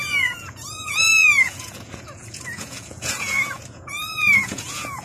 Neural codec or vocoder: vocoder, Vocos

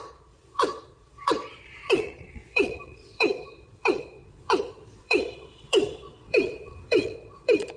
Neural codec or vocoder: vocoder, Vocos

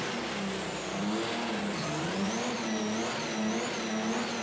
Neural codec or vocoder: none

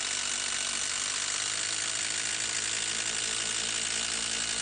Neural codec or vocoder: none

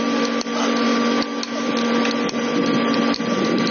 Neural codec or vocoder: none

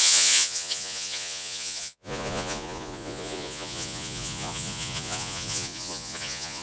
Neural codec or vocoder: vocoder, Vocos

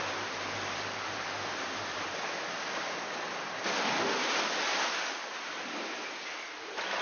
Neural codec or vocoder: none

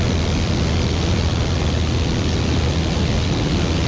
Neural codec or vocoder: none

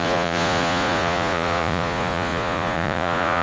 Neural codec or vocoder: vocoder, Vocos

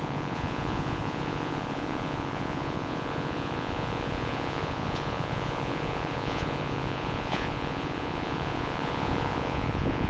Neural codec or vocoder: vocoder, Vocos